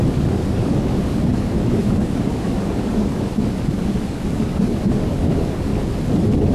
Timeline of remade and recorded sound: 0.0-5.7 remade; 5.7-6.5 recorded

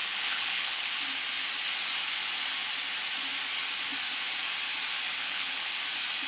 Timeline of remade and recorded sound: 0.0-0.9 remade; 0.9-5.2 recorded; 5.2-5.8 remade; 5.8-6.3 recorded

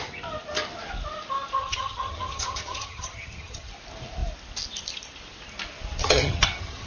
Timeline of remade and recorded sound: 0.0-1.6 recorded; 1.6-3.7 remade; 3.7-6.0 recorded; 6.0-6.9 remade